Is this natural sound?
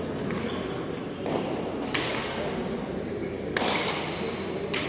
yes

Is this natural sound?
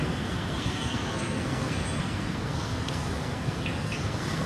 no